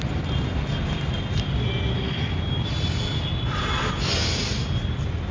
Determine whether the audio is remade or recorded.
recorded